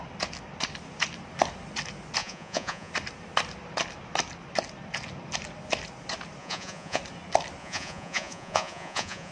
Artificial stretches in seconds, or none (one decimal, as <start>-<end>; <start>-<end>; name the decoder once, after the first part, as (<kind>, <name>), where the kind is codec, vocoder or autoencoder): 2.2-2.9 (vocoder, Vocos); 6.4-7.0; 7.6-9.3